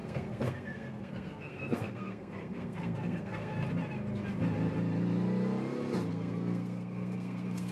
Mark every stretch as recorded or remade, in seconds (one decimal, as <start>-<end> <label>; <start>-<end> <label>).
0.0-3.5 remade; 3.5-6.1 recorded; 6.1-7.7 remade